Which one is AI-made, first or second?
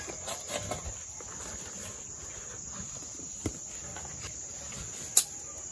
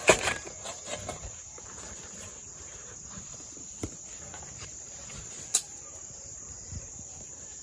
second